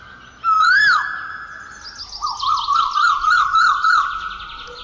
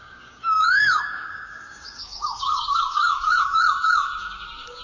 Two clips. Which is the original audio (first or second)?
first